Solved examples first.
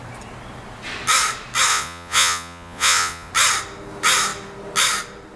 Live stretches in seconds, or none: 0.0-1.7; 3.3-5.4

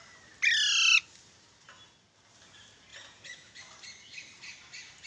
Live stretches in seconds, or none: 0.0-2.9; 3.6-5.1

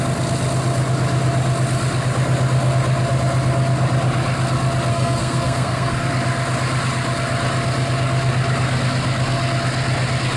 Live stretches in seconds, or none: 0.0-4.9; 6.1-10.4

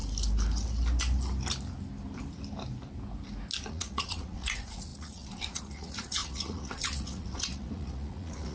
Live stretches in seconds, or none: 0.0-3.7

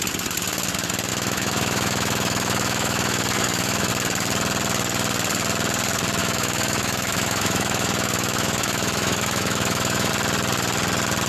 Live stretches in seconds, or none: 0.0-1.1; 3.9-6.2; 10.1-11.3

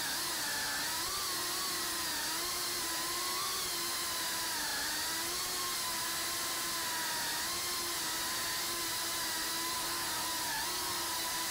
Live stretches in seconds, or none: 0.0-11.5

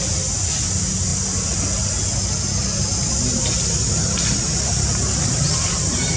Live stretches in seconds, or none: 0.0-6.2

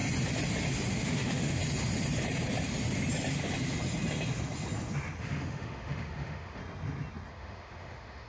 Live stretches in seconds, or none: 0.0-0.9; 1.6-5.2; 6.6-7.3